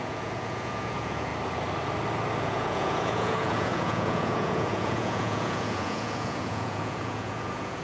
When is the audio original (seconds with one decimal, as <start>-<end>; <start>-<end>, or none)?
1.3-2.4